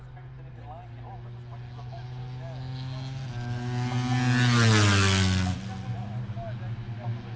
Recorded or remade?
recorded